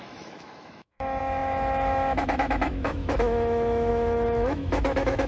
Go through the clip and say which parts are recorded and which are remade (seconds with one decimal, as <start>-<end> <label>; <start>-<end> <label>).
0.0-5.3 remade